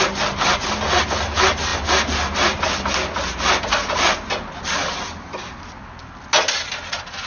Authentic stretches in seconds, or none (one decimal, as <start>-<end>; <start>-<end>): 0.0-7.3